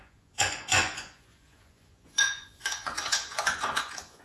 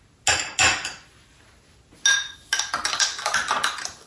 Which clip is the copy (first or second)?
first